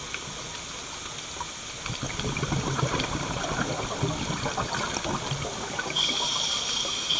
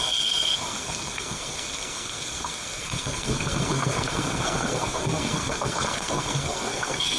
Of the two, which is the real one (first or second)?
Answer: first